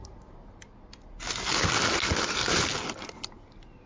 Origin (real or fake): real